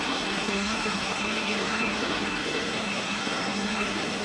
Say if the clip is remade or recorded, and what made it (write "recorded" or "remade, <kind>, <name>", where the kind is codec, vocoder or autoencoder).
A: remade, codec, SNAC